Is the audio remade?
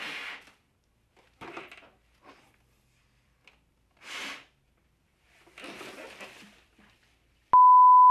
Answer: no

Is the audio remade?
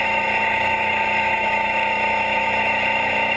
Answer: yes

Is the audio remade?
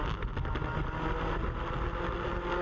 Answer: no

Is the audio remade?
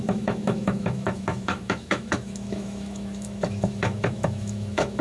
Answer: yes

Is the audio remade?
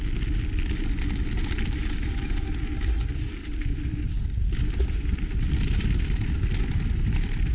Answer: no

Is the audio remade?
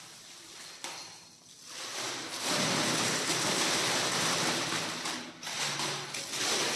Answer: no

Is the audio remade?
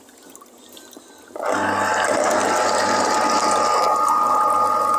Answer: no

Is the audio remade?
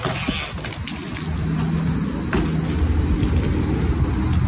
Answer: no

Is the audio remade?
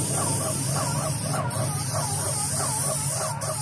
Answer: no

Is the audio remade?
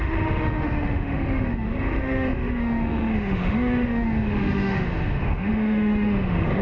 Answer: yes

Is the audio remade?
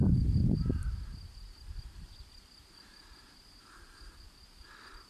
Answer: no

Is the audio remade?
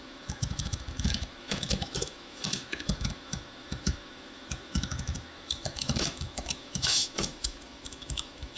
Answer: yes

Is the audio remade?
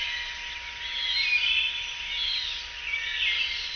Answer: no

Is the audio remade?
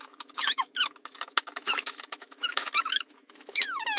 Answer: yes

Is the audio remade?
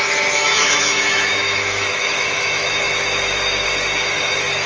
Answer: yes